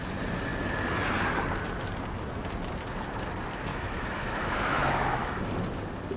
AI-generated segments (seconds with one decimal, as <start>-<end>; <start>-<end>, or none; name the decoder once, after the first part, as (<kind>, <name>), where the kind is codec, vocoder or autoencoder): 3.7-5.5 (autoencoder, DAC-VAE)